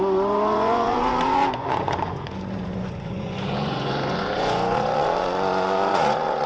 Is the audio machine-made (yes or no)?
yes